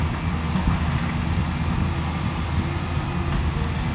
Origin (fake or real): real